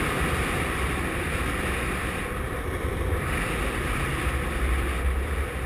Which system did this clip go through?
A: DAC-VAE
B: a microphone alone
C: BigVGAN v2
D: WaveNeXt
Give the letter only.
B